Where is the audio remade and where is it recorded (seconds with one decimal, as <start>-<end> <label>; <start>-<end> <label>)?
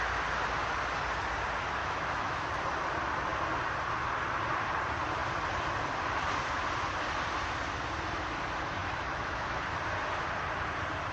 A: 0.0-1.8 recorded; 1.8-2.5 remade; 2.5-8.8 recorded; 8.8-9.6 remade; 9.6-11.1 recorded